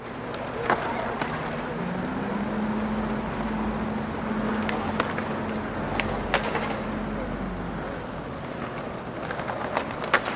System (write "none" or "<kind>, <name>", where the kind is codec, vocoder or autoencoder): none